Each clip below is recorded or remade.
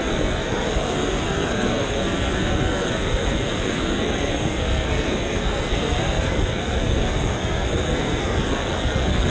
remade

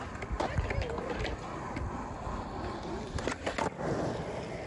recorded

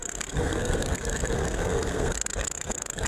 remade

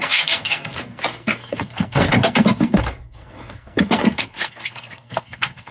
remade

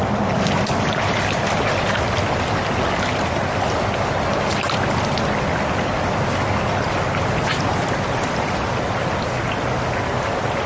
recorded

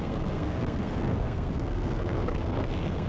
remade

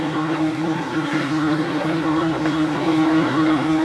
remade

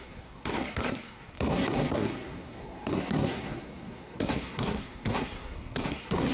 remade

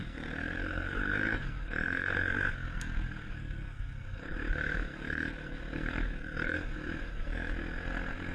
remade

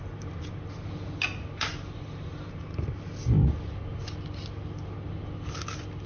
recorded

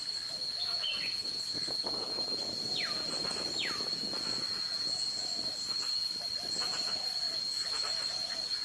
recorded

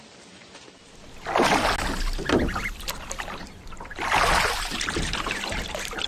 recorded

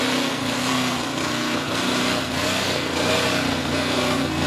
remade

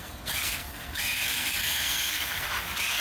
remade